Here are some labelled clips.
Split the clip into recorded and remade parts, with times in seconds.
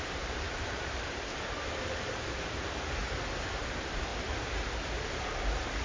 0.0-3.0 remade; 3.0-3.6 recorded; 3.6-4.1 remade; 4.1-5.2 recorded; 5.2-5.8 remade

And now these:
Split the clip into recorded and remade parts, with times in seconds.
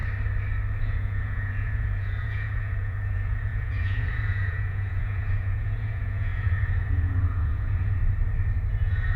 0.0-0.8 recorded; 0.8-8.0 remade; 8.0-8.7 recorded; 8.7-9.2 remade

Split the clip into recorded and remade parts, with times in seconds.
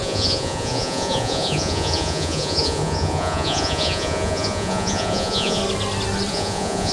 0.0-5.6 remade; 5.6-6.3 recorded; 6.3-6.9 remade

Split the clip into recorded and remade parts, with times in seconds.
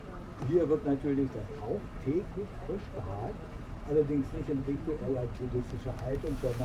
0.0-1.9 recorded; 1.9-3.0 remade; 3.0-4.2 recorded; 4.2-6.6 remade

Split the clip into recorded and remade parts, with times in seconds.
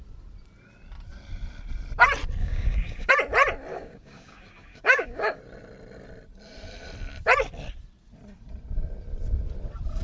0.0-2.4 recorded; 2.4-3.1 remade; 3.1-3.7 recorded; 3.7-5.4 remade; 5.4-10.0 recorded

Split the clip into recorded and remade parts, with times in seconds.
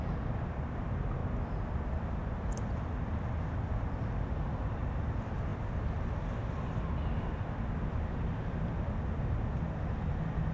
0.0-10.5 recorded